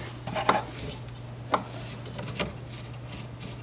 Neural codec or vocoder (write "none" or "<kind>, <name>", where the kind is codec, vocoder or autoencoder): none